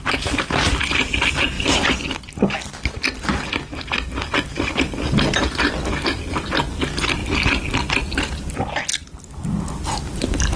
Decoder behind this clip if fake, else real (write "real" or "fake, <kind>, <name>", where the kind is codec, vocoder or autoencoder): real